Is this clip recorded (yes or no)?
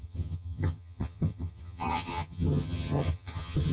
no